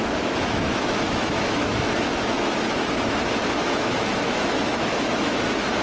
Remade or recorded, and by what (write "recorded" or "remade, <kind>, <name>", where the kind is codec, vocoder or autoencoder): remade, autoencoder, DAC-VAE